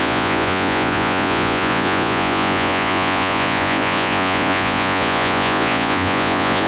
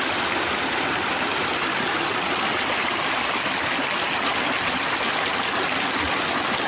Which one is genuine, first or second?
second